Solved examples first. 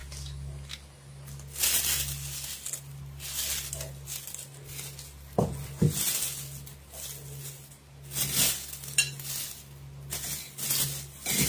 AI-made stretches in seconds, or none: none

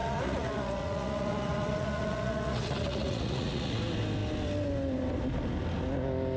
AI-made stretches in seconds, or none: 0.0-3.8 (vocoder, Vocos)

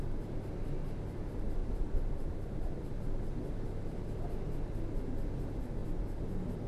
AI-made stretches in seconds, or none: 1.6-2.9 (vocoder, BigVGAN v2)

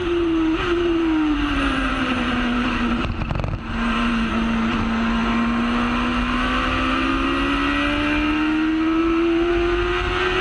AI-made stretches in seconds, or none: 0.0-4.3 (vocoder, BigVGAN v2); 9.0-9.5

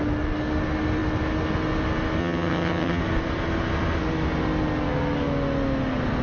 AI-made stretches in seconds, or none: 2.2-3.0 (vocoder, HiFi-GAN)

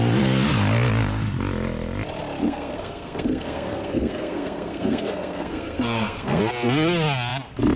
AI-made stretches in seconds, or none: 2.4-6.4 (codec, SNAC)

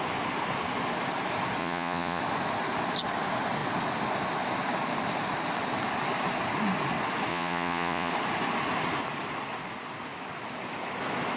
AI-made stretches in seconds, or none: 1.6-2.2 (vocoder, Vocos); 7.3-8.1